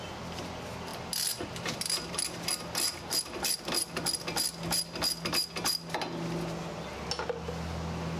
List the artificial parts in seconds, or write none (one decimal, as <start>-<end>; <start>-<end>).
none